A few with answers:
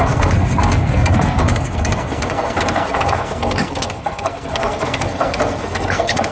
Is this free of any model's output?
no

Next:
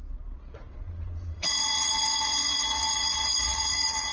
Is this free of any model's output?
no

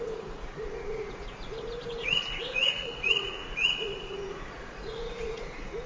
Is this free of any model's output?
no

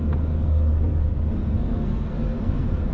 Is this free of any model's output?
no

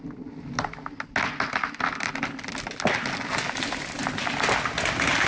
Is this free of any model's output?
yes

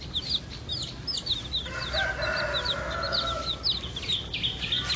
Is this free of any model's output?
yes